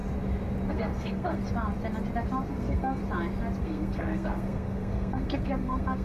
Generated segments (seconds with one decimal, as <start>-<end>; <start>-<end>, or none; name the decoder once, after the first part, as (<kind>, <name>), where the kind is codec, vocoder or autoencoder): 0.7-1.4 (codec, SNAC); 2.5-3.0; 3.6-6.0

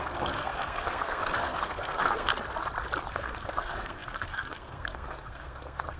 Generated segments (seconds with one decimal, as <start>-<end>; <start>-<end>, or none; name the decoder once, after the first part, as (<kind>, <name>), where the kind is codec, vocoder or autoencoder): 0.0-2.3 (codec, SNAC); 3.1-6.0

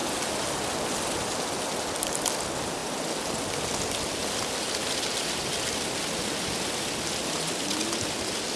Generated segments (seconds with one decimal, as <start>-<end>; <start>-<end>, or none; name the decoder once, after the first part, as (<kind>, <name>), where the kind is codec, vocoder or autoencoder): none

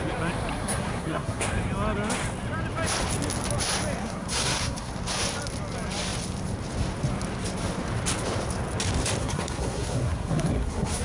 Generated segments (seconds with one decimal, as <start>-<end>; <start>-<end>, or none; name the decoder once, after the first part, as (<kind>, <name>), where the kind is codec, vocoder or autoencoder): 0.5-1.4 (codec, SNAC); 4.0-4.9; 9.2-11.0

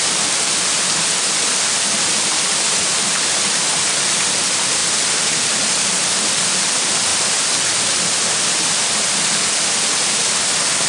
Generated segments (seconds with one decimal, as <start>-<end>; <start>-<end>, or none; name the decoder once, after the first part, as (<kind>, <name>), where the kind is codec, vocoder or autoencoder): none

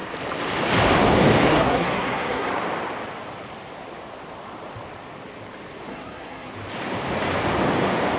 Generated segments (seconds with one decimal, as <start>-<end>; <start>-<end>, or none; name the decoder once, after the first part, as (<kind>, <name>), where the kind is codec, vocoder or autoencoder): 1.5-2.5 (codec, SNAC); 5.9-6.5